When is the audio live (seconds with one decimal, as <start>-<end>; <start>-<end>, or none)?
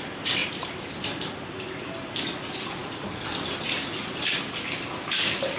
0.0-5.6